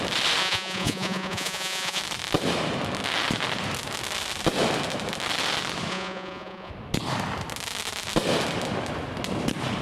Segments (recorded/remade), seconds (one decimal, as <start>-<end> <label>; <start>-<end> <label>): 0.0-0.4 recorded; 0.4-2.0 remade; 2.0-5.9 recorded; 5.9-6.7 remade; 6.7-9.8 recorded